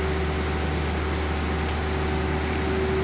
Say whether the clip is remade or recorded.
recorded